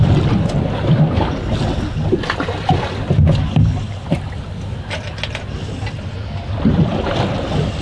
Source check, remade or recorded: recorded